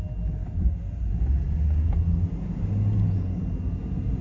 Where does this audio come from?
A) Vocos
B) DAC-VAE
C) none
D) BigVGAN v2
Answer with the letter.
C